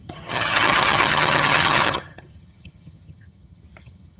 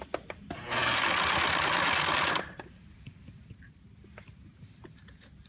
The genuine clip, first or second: second